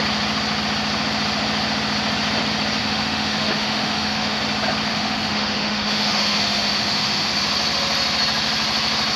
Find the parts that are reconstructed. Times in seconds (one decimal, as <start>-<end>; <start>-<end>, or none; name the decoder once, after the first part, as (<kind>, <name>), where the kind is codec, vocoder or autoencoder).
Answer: 2.8-4.4 (autoencoder, DAC-VAE); 4.9-7.3